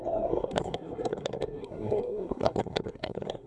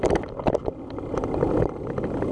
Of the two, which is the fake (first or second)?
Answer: first